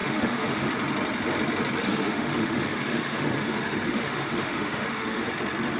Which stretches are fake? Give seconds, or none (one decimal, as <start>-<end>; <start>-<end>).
0.0-0.7; 1.8-5.3

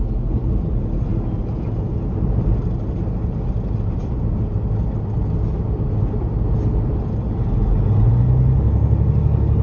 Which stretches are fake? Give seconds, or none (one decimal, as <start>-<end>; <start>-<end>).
none